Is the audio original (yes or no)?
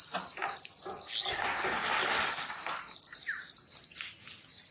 yes